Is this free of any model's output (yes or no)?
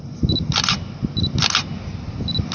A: yes